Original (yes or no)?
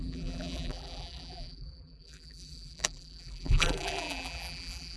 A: no